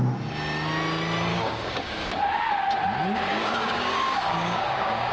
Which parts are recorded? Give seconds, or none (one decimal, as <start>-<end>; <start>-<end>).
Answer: 0.0-1.3; 2.2-3.3